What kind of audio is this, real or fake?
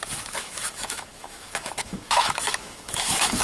fake